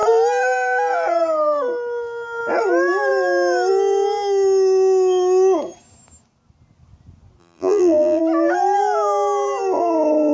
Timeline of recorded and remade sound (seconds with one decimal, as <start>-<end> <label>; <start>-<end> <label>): 0.0-7.4 recorded; 7.4-8.2 remade; 8.2-10.3 recorded